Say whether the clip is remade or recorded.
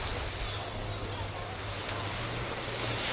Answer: recorded